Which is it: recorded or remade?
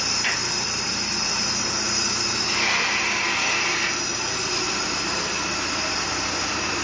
recorded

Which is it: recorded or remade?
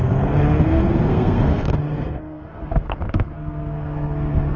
remade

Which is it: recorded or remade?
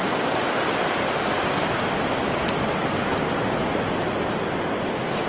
recorded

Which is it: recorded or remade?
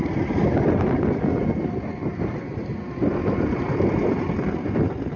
recorded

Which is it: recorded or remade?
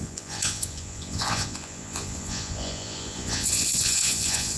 remade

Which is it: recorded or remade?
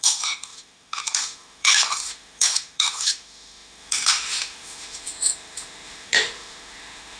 remade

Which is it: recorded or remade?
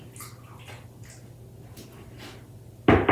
recorded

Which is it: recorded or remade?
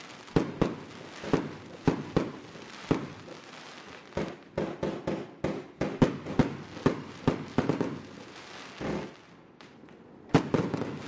recorded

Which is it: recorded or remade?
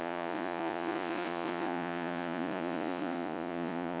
remade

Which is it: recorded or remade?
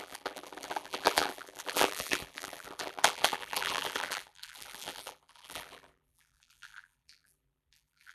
remade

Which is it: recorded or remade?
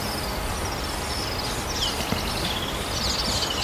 recorded